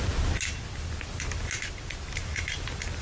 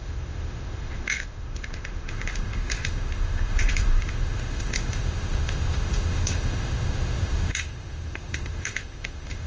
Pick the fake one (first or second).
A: second